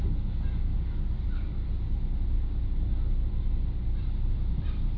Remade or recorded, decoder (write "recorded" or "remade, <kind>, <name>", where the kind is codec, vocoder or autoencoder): recorded